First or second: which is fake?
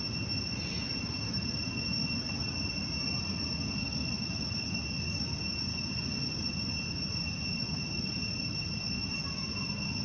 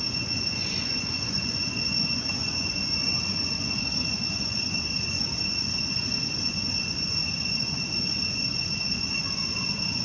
second